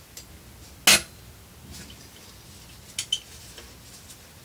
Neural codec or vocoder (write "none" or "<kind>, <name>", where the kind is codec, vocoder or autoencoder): none